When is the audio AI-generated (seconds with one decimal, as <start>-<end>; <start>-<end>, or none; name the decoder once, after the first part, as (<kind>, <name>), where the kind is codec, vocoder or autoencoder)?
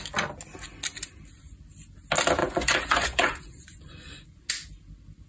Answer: 2.4-4.5 (vocoder, Vocos)